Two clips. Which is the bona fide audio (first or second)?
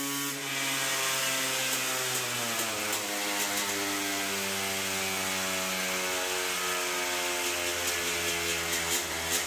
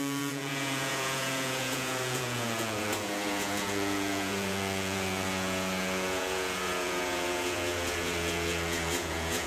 first